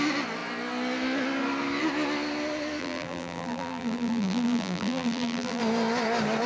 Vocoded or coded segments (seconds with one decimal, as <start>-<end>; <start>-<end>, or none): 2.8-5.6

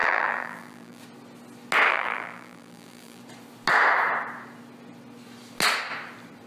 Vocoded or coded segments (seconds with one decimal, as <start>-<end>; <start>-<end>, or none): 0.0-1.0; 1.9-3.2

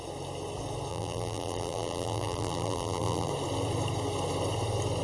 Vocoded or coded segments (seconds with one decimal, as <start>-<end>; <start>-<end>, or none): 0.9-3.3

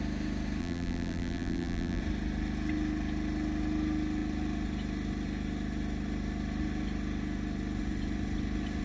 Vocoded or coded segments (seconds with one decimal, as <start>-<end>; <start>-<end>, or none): 0.6-2.0

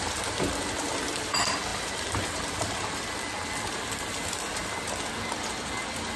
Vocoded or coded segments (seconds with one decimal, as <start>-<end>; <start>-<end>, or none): 1.7-3.5

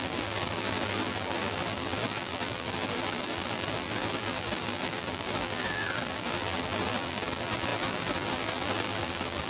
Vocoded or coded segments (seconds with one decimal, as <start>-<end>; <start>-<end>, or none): 0.0-9.5